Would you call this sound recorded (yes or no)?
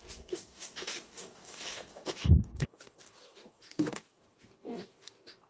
no